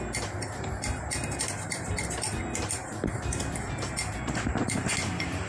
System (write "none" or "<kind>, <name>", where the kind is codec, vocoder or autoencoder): none